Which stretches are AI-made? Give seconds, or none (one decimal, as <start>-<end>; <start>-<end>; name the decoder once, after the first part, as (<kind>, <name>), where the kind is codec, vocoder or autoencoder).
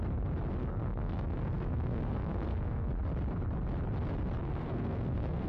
0.6-2.9 (codec, SNAC); 4.4-5.5